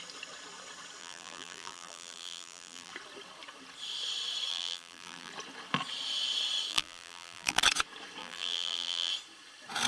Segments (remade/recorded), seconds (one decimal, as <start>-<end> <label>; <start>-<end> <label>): 0.0-1.0 recorded; 1.0-2.9 remade; 2.9-4.5 recorded; 4.5-5.3 remade; 5.3-6.7 recorded; 6.7-7.6 remade; 7.6-8.2 recorded; 8.2-9.1 remade; 9.1-9.9 recorded